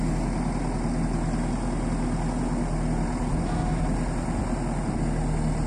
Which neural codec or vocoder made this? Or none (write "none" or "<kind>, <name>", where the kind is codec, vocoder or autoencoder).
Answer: none